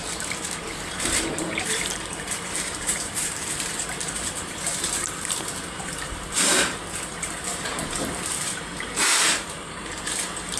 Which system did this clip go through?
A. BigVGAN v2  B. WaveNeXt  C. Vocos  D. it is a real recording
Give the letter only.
A